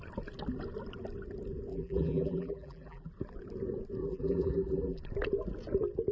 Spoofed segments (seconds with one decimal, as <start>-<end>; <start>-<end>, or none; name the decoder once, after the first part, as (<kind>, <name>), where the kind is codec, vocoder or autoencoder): 1.7-3.1 (vocoder, BigVGAN v2); 4.0-5.0